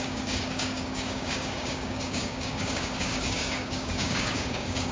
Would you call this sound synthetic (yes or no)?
yes